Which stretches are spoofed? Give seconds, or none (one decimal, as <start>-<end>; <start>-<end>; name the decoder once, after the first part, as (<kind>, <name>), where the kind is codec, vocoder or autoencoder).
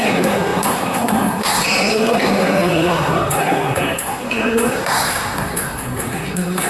0.0-6.7 (codec, SNAC)